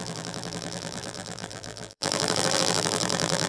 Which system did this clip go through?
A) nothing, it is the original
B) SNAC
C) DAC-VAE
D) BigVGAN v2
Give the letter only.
D